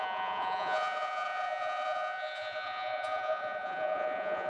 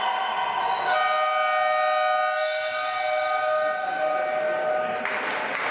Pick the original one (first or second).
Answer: second